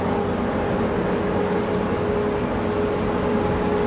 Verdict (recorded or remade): recorded